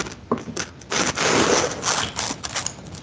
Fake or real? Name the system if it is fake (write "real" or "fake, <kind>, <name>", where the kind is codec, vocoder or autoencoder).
real